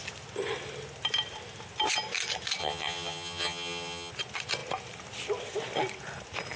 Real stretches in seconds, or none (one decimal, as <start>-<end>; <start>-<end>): 0.0-2.6; 4.1-6.6